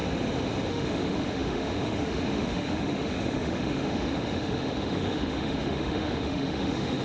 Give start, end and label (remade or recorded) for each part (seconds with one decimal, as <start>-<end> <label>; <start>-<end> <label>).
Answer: 0.0-0.7 recorded; 0.7-7.0 remade